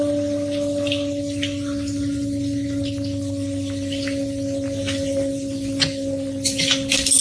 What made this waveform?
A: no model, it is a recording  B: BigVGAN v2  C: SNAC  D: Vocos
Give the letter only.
A